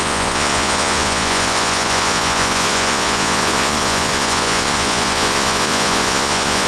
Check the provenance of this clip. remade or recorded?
remade